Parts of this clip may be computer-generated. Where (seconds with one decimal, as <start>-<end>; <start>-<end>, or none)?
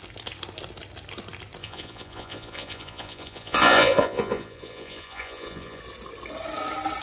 1.6-5.8